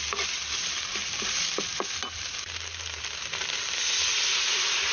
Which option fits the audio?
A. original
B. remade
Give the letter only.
A